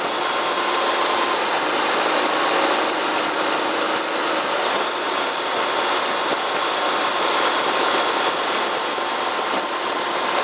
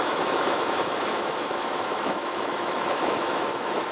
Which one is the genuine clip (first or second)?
first